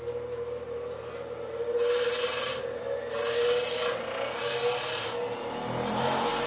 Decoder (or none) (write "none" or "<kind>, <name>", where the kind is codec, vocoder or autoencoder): none